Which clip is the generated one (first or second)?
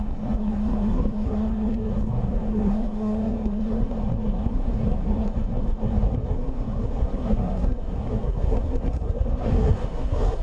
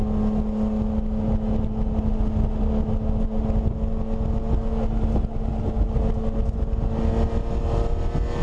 first